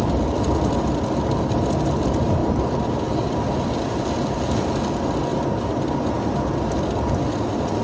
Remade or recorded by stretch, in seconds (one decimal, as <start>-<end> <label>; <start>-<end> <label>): 0.0-0.6 remade; 0.6-2.4 recorded; 2.4-2.9 remade; 2.9-7.8 recorded